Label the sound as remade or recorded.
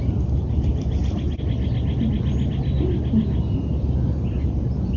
recorded